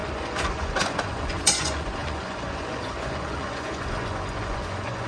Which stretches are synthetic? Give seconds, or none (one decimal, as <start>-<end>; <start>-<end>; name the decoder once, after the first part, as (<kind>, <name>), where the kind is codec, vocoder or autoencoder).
0.0-5.1 (vocoder, Vocos)